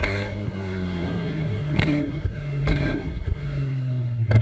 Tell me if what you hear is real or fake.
fake